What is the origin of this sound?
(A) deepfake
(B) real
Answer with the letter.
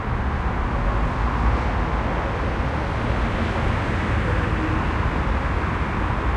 B